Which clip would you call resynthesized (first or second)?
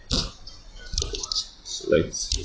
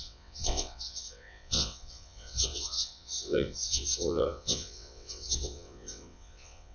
second